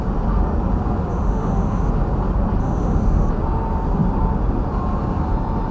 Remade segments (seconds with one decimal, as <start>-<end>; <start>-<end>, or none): 1.1-1.9; 2.6-3.3